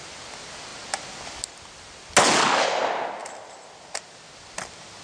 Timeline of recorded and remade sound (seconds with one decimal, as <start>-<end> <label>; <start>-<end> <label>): 0.0-3.2 recorded; 3.2-3.7 remade; 3.7-5.0 recorded